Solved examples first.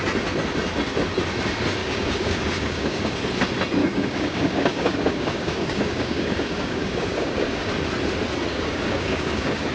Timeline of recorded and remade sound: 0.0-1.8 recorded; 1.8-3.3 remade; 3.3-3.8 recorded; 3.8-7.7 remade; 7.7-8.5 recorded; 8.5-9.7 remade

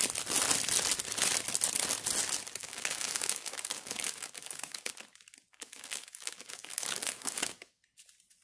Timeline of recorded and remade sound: 0.0-2.6 recorded; 2.6-4.9 remade; 4.9-5.5 recorded; 5.5-7.8 remade; 7.8-8.4 recorded

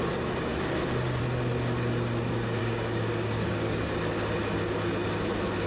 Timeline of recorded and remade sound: 0.0-2.6 recorded; 2.6-3.8 remade; 3.8-5.7 recorded

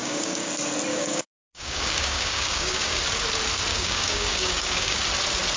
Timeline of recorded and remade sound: 0.0-0.5 remade; 0.5-0.9 recorded; 0.9-3.0 remade; 3.0-3.7 recorded; 3.7-5.0 remade; 5.0-5.6 recorded

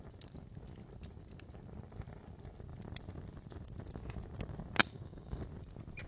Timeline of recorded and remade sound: 0.0-4.8 recorded; 4.8-5.4 remade; 5.4-6.1 recorded